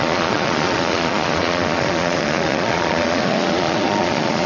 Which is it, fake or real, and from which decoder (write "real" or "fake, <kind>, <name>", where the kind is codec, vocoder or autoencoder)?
fake, vocoder, Vocos